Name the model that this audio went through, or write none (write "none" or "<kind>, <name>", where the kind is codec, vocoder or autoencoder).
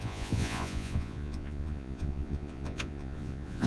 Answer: vocoder, Vocos